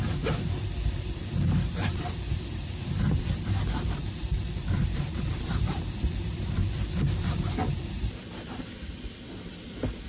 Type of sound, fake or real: fake